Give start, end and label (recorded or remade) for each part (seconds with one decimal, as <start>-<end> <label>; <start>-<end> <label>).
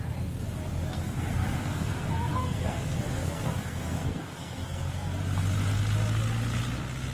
0.0-0.9 recorded; 0.9-5.2 remade; 5.2-7.1 recorded